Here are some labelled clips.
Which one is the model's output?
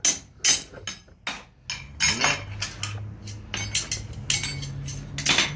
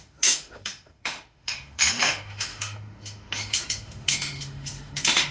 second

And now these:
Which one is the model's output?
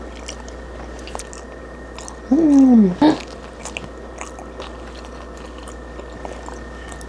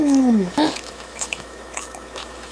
second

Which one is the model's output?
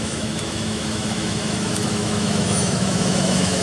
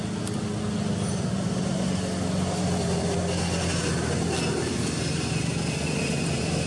first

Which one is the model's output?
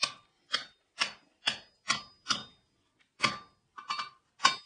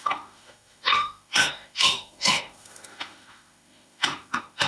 second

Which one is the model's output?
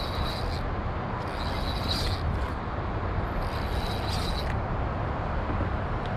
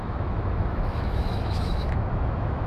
second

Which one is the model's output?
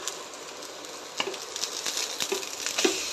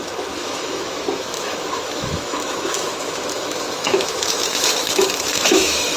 second